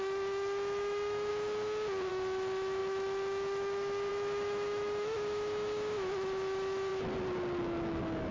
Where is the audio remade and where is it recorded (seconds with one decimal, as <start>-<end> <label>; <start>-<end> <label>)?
0.0-1.3 remade; 1.3-2.1 recorded; 2.1-6.9 remade; 6.9-7.6 recorded; 7.6-8.3 remade